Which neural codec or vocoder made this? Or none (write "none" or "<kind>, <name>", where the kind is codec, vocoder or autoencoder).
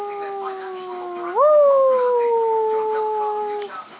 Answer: none